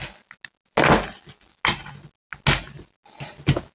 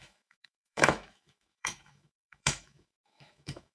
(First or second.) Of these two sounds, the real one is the first